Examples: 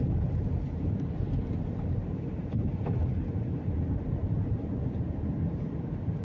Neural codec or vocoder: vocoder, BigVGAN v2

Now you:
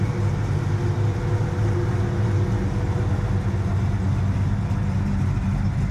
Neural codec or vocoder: none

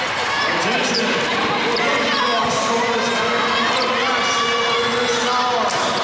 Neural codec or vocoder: none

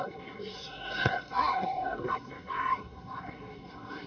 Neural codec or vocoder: codec, SNAC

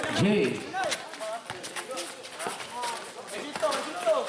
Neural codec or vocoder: none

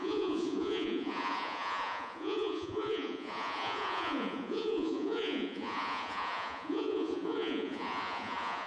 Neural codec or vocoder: vocoder, Vocos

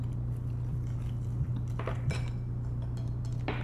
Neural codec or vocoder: none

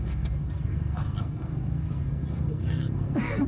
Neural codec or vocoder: codec, SNAC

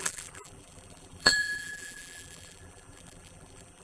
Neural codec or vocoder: vocoder, BigVGAN v2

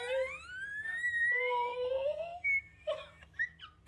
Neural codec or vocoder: none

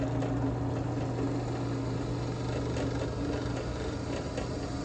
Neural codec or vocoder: none